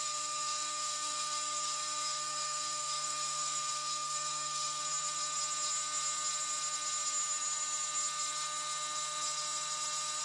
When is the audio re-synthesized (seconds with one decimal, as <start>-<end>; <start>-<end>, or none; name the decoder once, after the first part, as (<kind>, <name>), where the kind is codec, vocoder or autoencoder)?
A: 0.0-4.8 (codec, SNAC)